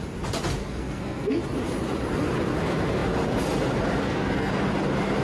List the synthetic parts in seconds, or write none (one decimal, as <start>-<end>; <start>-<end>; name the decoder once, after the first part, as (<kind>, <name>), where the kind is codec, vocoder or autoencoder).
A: 0.6-1.4 (codec, SNAC); 4.0-4.5